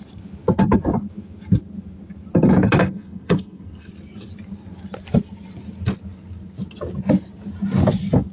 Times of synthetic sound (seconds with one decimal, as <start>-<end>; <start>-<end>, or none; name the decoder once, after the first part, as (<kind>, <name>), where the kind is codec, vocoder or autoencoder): 2.8-3.9 (codec, SNAC)